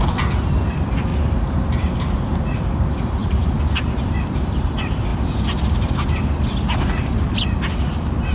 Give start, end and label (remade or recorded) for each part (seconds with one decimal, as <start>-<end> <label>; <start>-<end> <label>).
0.0-1.1 remade; 1.1-2.0 recorded; 2.0-8.3 remade